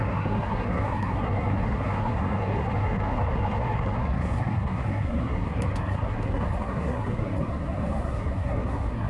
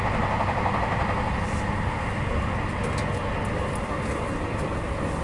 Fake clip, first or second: first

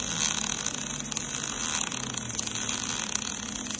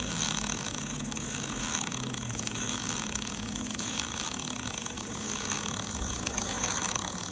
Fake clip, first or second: second